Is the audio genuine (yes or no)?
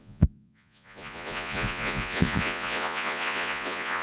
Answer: no